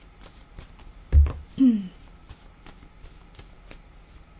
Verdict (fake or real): real